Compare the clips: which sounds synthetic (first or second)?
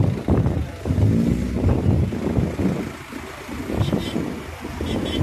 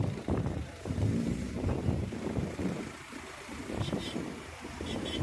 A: second